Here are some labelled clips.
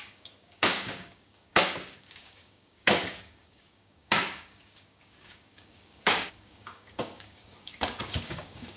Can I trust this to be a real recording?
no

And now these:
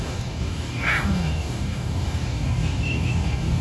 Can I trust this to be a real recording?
no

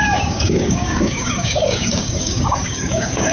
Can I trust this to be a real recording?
no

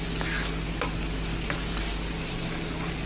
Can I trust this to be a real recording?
yes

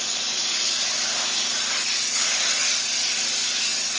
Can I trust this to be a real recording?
no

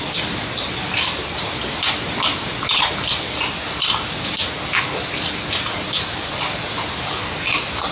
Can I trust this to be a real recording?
yes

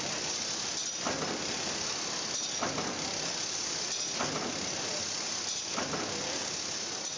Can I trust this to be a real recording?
yes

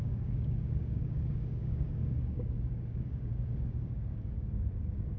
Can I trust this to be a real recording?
no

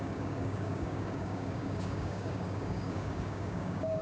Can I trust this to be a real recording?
no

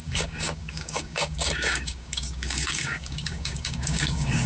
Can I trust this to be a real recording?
no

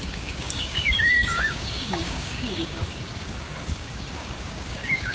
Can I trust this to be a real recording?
no